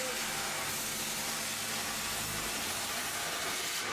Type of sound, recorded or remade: recorded